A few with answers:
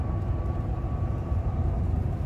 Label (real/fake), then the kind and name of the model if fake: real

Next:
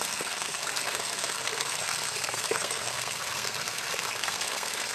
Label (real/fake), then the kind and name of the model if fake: fake, codec, SNAC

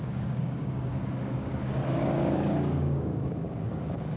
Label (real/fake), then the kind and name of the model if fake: fake, codec, DAC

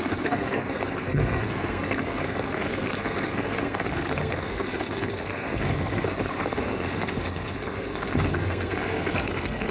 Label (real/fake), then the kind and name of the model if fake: fake, codec, SNAC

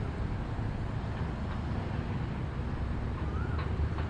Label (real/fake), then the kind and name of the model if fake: real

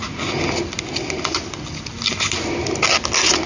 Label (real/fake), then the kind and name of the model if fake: real